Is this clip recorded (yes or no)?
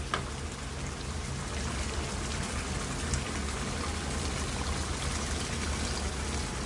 yes